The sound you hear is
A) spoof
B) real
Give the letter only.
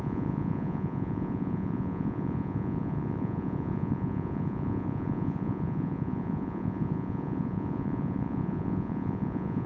A